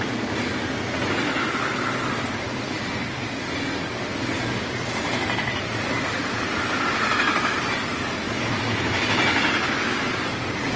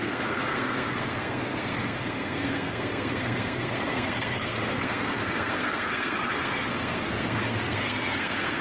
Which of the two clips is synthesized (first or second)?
second